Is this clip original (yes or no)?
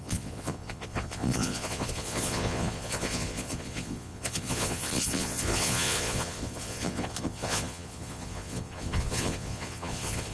no